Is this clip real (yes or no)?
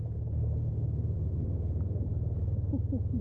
yes